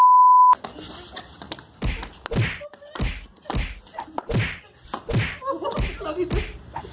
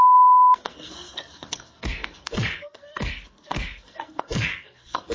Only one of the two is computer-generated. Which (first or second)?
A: second